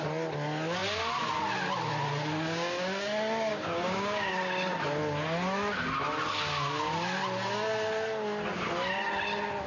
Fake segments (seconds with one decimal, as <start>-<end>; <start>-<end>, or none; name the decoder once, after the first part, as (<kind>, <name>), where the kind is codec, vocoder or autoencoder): 3.5-4.3 (codec, DAC)